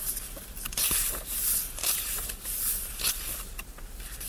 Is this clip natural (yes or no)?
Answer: yes